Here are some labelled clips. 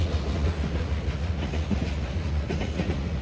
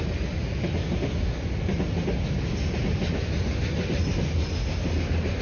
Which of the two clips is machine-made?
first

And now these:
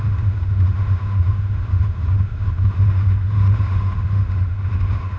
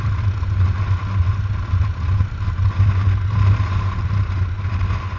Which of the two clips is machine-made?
first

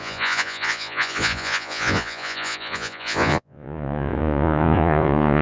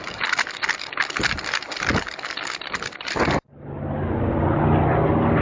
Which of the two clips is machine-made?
first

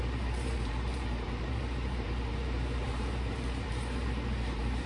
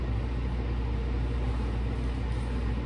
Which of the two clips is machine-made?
first